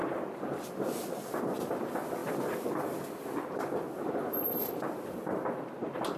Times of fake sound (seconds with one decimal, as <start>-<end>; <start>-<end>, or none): 1.3-6.2